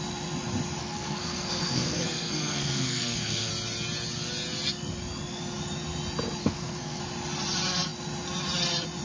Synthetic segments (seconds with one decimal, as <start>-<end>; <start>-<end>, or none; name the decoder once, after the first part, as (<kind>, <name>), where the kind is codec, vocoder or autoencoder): 0.8-3.5 (codec, SNAC); 6.4-7.0